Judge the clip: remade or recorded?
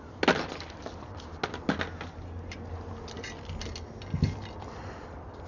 recorded